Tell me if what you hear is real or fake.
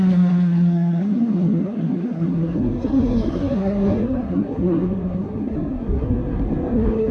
fake